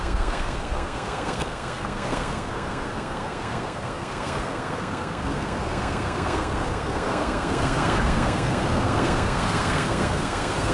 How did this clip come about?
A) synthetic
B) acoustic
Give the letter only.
A